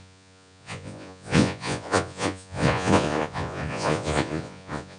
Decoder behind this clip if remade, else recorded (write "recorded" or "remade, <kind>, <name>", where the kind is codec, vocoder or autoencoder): remade, vocoder, Vocos